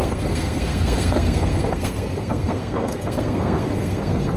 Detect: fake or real fake